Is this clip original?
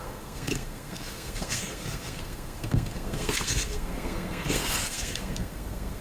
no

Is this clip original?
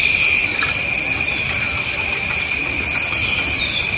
no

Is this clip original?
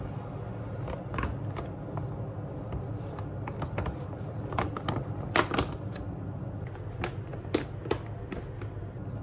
yes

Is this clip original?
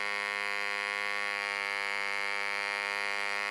yes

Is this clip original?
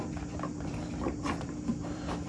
no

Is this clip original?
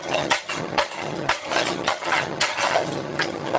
no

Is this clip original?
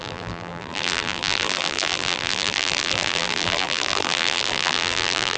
no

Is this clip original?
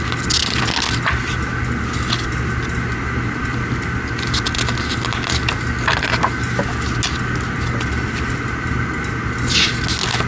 yes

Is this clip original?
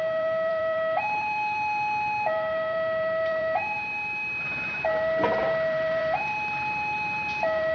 no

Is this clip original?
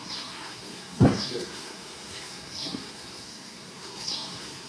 no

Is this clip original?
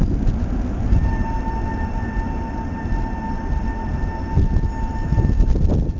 yes